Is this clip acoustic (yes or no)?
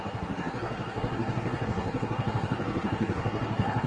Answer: no